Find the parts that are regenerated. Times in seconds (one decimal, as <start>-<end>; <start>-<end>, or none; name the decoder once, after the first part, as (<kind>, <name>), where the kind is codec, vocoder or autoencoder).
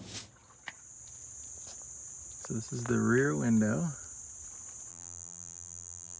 4.9-6.2 (vocoder, BigVGAN v2)